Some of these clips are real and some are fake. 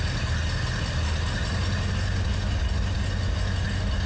real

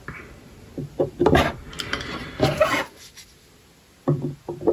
real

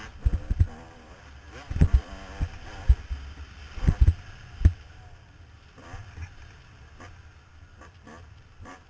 real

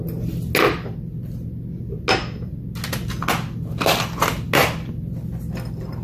real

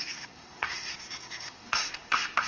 fake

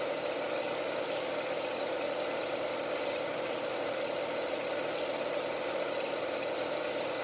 fake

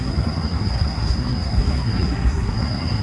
fake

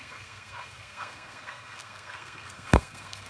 fake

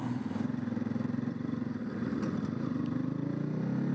real